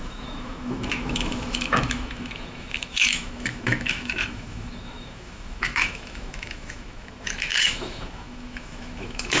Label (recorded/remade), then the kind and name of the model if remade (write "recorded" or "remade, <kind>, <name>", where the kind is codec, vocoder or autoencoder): remade, autoencoder, DAC-VAE